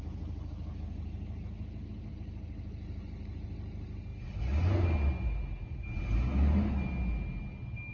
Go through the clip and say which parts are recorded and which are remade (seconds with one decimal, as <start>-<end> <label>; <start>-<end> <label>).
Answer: 0.0-7.9 recorded